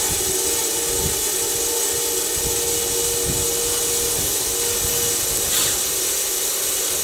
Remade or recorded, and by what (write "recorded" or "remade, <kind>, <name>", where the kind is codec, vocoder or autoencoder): recorded